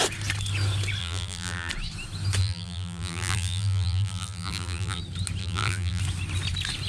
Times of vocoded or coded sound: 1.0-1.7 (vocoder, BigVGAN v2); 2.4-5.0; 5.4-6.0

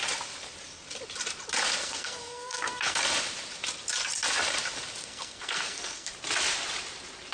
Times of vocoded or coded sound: 1.8-3.0 (codec, SNAC); 5.0-6.1

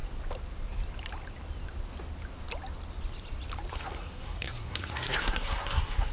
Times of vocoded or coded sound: 3.7-6.1 (codec, SNAC)

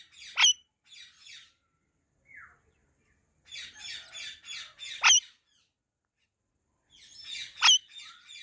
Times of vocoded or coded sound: none